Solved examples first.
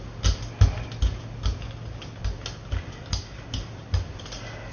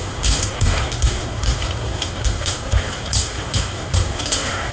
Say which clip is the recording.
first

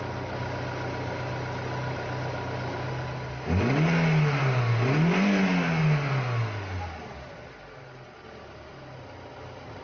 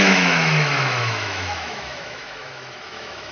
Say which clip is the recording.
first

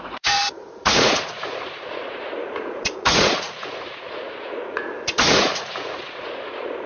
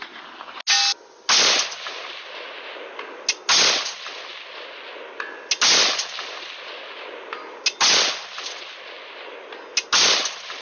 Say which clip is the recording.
second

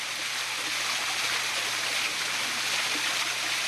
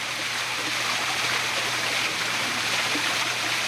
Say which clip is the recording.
first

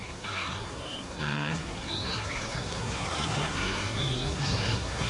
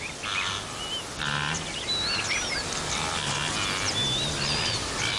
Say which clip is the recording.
second